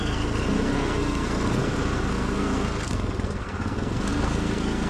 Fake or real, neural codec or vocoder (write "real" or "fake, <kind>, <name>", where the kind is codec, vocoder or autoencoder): fake, codec, SNAC